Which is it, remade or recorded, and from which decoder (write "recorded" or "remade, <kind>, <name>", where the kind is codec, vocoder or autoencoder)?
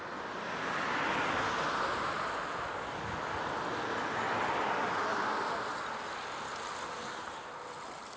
recorded